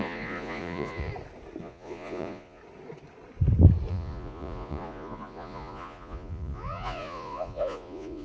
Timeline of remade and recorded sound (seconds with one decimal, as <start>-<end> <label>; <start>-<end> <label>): 0.0-1.1 remade; 1.1-1.6 recorded; 1.6-2.6 remade; 2.6-3.9 recorded; 3.9-8.2 remade